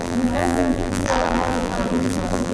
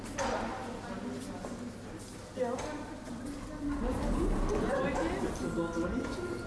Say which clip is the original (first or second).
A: second